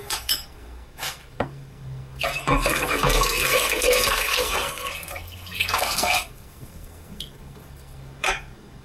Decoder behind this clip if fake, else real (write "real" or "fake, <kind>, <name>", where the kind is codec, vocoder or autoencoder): fake, codec, SNAC